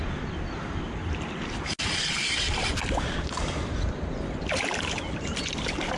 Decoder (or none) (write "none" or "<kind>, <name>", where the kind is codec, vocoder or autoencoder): none